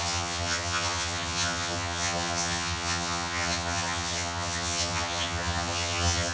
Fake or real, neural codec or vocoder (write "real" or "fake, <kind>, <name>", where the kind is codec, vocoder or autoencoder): fake, vocoder, HiFi-GAN